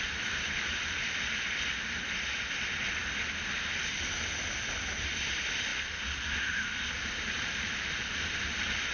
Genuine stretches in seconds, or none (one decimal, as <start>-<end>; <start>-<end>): 3.0-3.9; 5.7-6.5